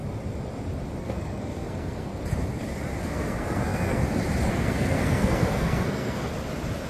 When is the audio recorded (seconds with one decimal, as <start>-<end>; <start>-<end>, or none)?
0.0-1.0; 2.1-3.0; 4.0-4.5; 6.3-6.9